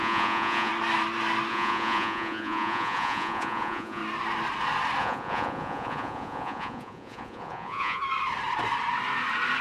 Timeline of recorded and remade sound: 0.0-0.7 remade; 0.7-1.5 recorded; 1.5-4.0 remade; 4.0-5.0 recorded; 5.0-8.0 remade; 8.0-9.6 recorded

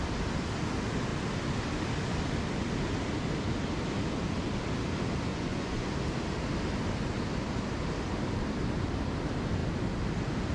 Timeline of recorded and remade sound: 0.0-5.3 recorded; 5.3-5.9 remade; 5.9-10.5 recorded

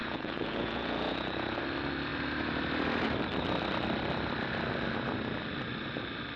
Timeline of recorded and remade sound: 0.0-1.6 remade; 1.6-6.4 recorded

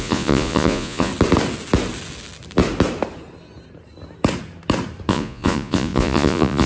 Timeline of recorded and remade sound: 0.0-1.1 remade; 1.1-5.1 recorded; 5.1-6.7 remade

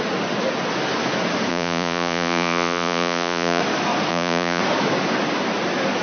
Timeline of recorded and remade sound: 0.0-1.5 recorded; 1.5-3.6 remade; 3.6-4.1 recorded; 4.1-4.6 remade; 4.6-6.0 recorded

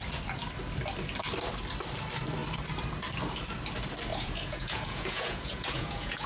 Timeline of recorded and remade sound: 0.0-4.1 recorded; 4.1-6.3 remade

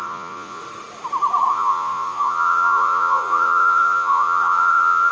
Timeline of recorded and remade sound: 0.0-0.6 remade; 0.6-1.5 recorded; 1.5-5.1 remade